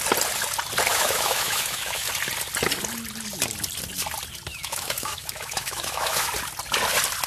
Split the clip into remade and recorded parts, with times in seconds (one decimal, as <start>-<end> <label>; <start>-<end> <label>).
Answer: 0.0-0.9 recorded; 0.9-2.1 remade; 2.1-4.5 recorded; 4.5-6.3 remade; 6.3-7.3 recorded